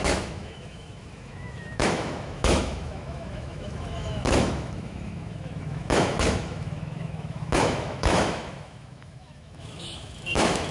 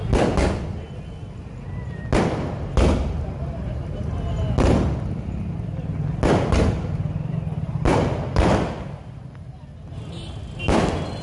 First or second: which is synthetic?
first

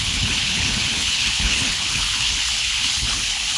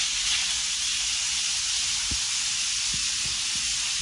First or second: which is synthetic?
first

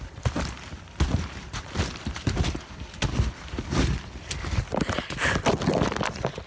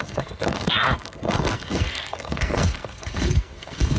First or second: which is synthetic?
second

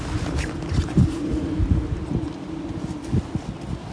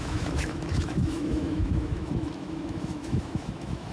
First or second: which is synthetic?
second